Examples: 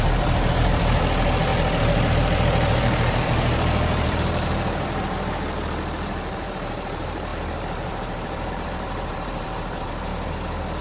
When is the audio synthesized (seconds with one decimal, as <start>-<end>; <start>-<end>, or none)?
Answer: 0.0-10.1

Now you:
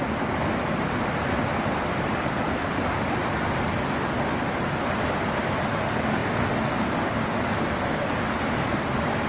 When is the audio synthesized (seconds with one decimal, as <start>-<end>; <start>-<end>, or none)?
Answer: none

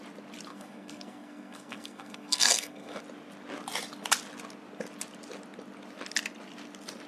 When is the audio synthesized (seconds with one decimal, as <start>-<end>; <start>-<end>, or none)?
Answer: 0.5-3.0